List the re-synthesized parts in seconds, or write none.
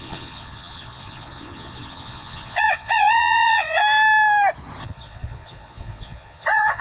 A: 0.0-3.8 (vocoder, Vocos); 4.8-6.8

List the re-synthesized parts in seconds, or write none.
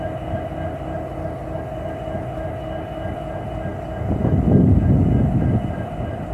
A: none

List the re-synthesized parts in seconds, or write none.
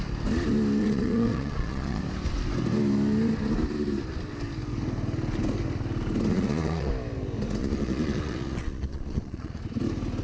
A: 0.8-2.0 (vocoder, Vocos); 6.3-6.9; 7.6-9.6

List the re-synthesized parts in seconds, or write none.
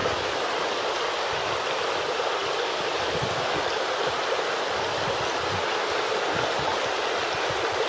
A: none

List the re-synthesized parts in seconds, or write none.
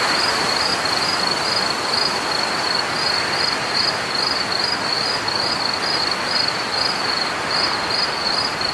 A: none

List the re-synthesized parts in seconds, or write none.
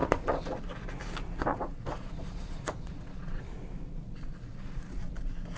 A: 0.0-0.6 (vocoder, Vocos); 1.5-4.9